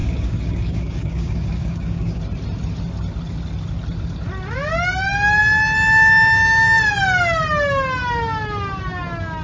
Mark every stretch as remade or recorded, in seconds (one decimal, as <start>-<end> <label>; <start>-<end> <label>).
0.0-2.2 remade; 2.2-9.4 recorded